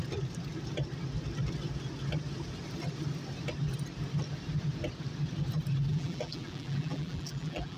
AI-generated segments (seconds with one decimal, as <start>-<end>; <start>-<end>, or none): 5.9-7.8